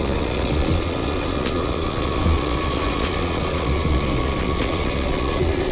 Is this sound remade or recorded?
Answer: remade